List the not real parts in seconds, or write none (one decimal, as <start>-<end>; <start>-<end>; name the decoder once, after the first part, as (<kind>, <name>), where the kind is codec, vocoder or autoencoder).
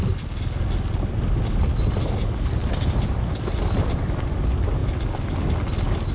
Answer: none